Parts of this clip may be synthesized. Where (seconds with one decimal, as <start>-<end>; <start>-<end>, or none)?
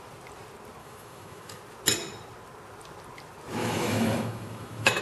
0.8-1.6; 3.6-5.0